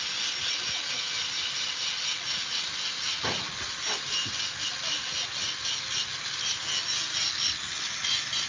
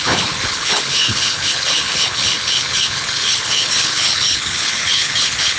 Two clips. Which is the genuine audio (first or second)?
first